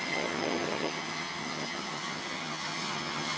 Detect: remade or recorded remade